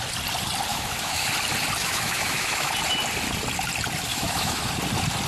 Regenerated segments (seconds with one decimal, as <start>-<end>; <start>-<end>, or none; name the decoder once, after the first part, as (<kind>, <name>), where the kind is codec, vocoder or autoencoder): 0.7-1.3 (autoencoder, DAC-VAE); 1.8-2.7; 4.1-4.6